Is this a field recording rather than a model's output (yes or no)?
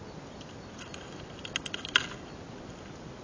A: yes